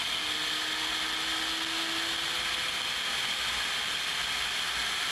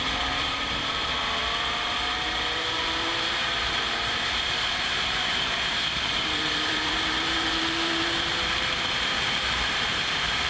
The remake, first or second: second